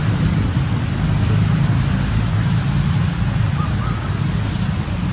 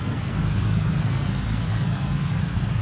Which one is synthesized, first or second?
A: second